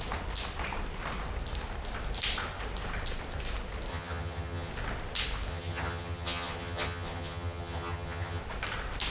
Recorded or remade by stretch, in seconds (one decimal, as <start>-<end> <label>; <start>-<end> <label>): 0.0-3.9 recorded; 3.9-4.7 remade; 4.7-5.5 recorded; 5.5-8.4 remade; 8.4-9.1 recorded